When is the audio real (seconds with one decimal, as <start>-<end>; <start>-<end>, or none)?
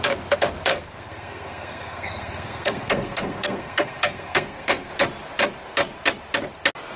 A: 0.0-0.7; 4.9-7.0